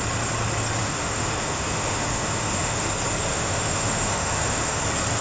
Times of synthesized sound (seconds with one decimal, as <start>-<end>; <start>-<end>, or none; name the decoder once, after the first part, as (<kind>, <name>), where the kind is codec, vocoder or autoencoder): 0.8-2.9 (autoencoder, DAC-VAE); 3.3-4.8